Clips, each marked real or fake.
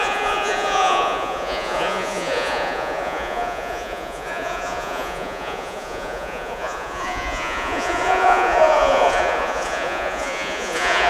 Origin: fake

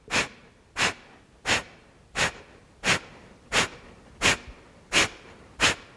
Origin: real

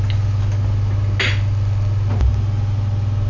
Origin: real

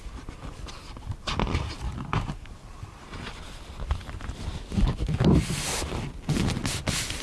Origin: real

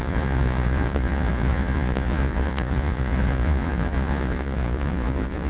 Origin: fake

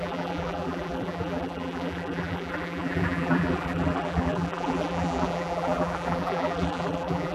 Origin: fake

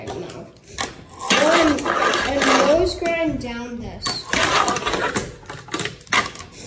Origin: real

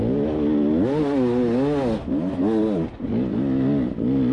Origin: real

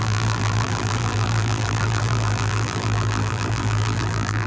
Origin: fake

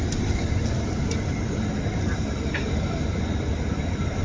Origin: real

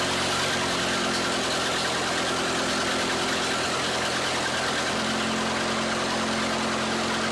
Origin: real